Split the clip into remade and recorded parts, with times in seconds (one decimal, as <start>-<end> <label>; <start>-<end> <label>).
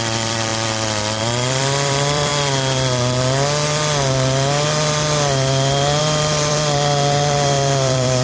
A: 0.0-0.5 remade; 0.5-1.2 recorded; 1.2-2.3 remade; 2.3-6.0 recorded; 6.0-8.2 remade